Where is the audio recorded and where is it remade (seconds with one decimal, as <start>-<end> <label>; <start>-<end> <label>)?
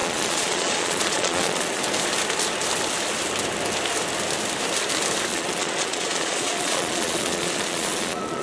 0.0-1.8 remade; 1.8-5.3 recorded; 5.3-8.4 remade